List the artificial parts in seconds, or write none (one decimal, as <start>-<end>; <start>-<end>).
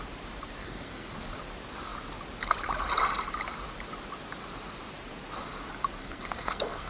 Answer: 0.6-1.1; 6.0-6.9